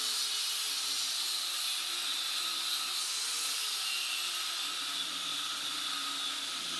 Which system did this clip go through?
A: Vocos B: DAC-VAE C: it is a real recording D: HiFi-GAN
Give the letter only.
C